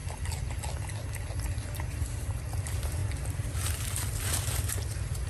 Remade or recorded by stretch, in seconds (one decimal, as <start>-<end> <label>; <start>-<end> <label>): 0.0-5.3 recorded